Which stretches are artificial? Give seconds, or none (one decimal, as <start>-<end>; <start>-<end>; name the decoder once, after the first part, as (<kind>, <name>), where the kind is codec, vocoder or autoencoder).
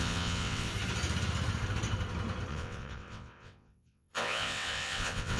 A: 0.0-0.7 (vocoder, WaveNeXt); 2.5-5.4